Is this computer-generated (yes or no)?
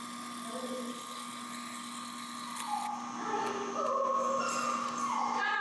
no